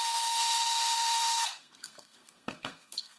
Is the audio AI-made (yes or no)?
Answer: yes